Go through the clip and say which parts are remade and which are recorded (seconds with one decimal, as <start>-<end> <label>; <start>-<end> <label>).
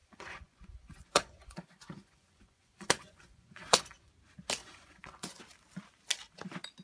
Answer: 0.0-4.1 remade; 4.1-4.6 recorded; 4.6-5.4 remade; 5.4-6.8 recorded